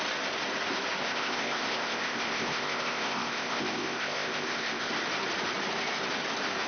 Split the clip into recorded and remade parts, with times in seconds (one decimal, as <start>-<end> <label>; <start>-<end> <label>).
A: 0.0-1.0 recorded; 1.0-4.9 remade; 4.9-6.7 recorded